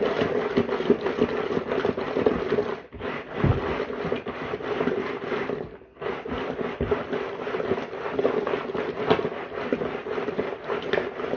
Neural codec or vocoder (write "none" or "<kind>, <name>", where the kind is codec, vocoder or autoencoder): none